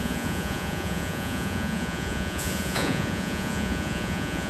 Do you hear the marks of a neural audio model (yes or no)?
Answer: yes